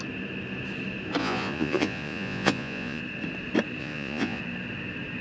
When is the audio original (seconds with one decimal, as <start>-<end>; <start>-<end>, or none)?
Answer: 0.0-1.2; 3.0-3.8; 4.4-5.2